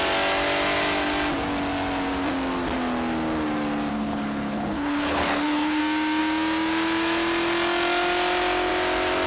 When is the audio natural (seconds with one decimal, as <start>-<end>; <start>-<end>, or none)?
0.0-3.9; 5.8-9.3